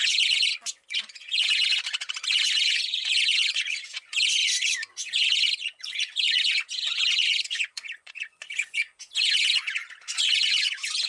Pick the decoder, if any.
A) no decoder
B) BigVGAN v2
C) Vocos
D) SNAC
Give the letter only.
C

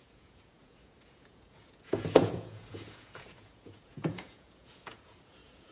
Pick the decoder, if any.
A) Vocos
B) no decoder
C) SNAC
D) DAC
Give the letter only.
A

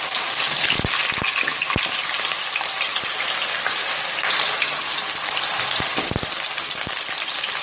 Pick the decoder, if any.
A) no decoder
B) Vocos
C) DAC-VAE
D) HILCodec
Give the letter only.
A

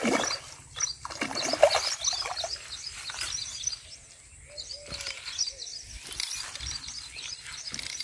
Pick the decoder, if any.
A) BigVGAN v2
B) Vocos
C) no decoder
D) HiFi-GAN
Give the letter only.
C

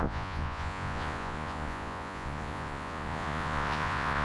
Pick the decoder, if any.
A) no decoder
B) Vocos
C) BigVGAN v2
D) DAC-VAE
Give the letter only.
B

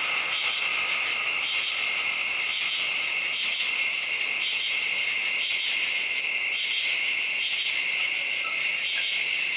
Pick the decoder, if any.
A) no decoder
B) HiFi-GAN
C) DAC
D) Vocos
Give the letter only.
A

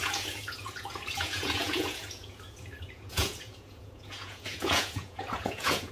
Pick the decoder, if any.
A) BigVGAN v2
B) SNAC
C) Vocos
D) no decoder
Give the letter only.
C